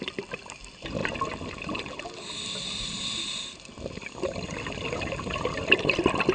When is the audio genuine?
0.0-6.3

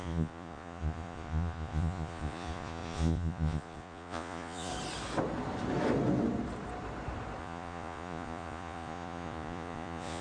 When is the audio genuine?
4.7-7.4

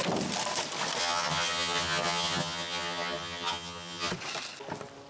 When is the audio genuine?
0.0-1.0; 4.1-5.1